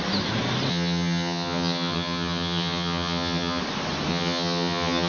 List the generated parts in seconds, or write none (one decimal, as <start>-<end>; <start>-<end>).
0.7-3.6; 4.1-5.1